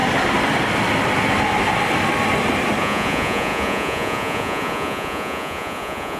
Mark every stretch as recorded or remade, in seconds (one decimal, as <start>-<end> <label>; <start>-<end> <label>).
0.0-2.8 recorded; 2.8-6.2 remade